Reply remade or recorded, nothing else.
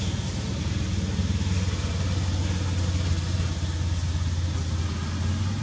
recorded